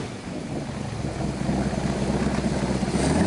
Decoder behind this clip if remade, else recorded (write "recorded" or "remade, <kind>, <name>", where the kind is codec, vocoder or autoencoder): recorded